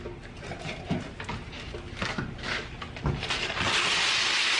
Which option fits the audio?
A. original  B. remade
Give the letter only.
A